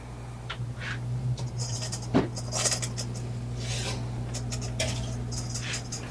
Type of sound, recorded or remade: recorded